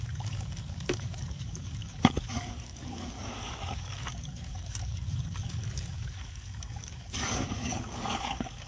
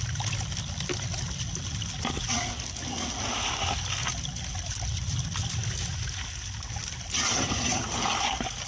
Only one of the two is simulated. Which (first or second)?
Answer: first